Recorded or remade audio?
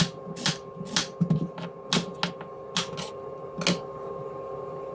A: recorded